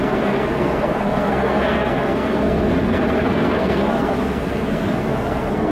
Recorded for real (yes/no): no